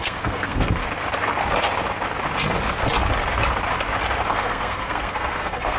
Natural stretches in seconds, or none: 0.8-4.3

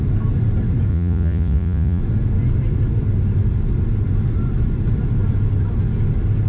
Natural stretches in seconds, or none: 0.0-0.9; 2.0-6.5

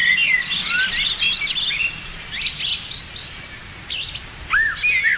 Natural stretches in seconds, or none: 1.8-5.2

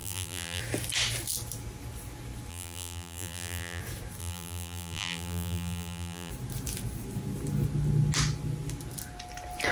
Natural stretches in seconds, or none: 0.6-2.5; 3.8-4.2; 6.3-9.7

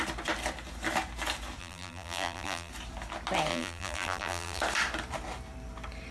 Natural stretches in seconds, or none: 0.0-1.6; 2.7-3.5; 4.6-6.1